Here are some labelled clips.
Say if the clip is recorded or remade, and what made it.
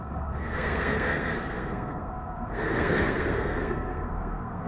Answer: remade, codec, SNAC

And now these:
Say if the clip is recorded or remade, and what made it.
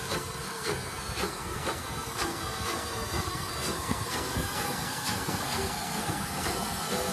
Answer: remade, codec, SNAC